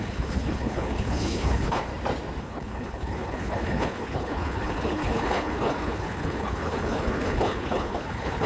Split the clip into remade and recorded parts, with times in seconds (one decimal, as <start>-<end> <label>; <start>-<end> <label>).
0.0-1.9 remade; 1.9-2.4 recorded; 2.4-8.5 remade